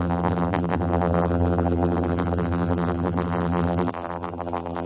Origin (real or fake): fake